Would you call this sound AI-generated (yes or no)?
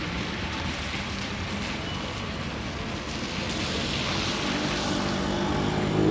no